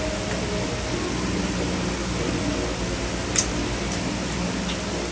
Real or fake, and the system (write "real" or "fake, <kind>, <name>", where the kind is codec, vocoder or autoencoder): real